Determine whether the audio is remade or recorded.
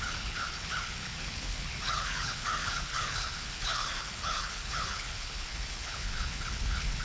remade